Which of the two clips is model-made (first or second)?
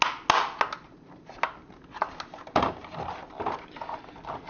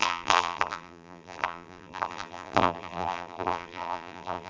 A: second